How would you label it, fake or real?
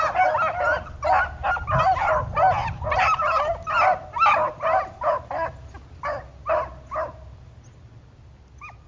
real